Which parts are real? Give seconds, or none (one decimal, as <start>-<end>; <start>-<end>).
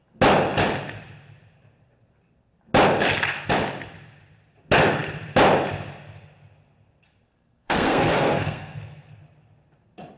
0.0-7.3; 9.2-10.2